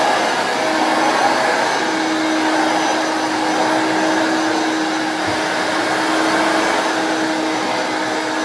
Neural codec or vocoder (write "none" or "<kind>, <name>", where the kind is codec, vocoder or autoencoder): none